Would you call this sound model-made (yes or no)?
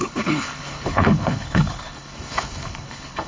yes